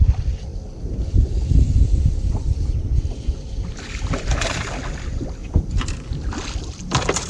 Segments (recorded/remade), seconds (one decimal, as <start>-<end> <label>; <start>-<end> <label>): 0.0-0.5 remade; 0.5-4.9 recorded; 4.9-5.4 remade; 5.4-6.6 recorded; 6.6-7.3 remade